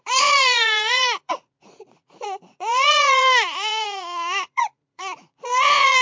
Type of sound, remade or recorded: remade